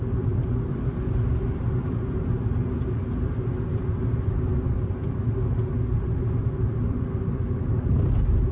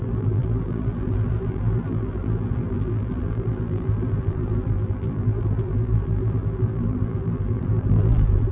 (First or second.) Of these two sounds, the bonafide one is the first